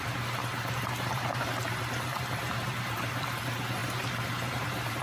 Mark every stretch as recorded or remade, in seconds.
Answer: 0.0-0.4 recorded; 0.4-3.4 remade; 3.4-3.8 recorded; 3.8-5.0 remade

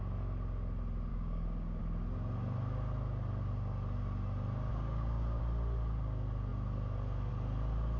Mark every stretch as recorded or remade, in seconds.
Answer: 0.0-1.1 recorded; 1.1-1.8 remade; 1.8-4.7 recorded; 4.7-5.4 remade; 5.4-8.0 recorded

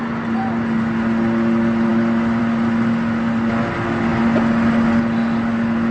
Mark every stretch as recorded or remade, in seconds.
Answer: 0.0-5.9 recorded

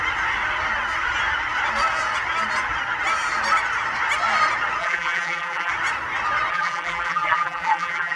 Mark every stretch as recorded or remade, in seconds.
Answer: 0.0-4.8 recorded; 4.8-5.7 remade; 5.7-6.5 recorded; 6.5-8.2 remade

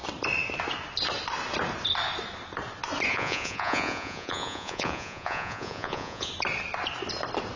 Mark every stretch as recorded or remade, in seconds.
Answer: 0.0-3.1 recorded; 3.1-6.3 remade; 6.3-7.6 recorded

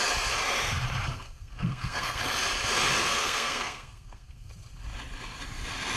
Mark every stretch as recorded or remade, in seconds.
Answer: 0.0-1.1 recorded; 1.1-2.2 remade; 2.2-3.0 recorded; 3.0-4.5 remade; 4.5-6.0 recorded